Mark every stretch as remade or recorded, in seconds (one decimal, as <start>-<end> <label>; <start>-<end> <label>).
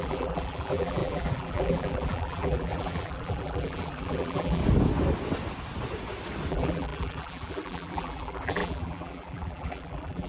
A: 0.0-4.6 remade; 4.6-6.5 recorded; 6.5-10.3 remade